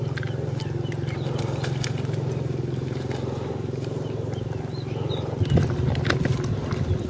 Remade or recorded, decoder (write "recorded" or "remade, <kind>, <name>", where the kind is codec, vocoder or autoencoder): recorded